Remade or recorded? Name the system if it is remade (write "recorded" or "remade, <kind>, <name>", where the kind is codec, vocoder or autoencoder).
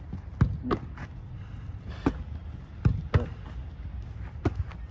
recorded